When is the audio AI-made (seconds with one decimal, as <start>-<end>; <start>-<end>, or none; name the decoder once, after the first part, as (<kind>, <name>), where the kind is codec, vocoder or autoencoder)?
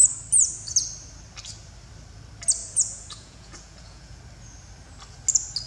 2.6-4.2 (vocoder, Vocos)